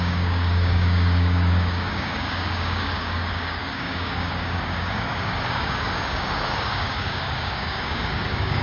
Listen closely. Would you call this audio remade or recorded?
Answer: remade